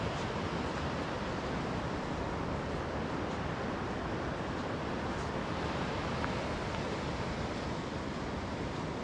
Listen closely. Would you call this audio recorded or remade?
recorded